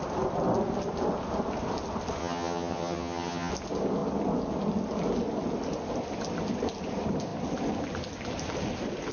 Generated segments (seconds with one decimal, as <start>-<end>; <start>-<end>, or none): 2.2-3.5